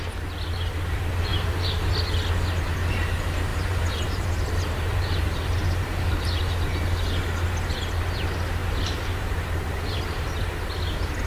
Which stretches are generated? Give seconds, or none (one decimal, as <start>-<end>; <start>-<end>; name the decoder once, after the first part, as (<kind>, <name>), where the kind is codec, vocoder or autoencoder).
1.3-1.9 (vocoder, BigVGAN v2); 3.5-6.4; 8.6-10.4